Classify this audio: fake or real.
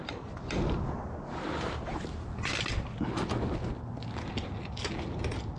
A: real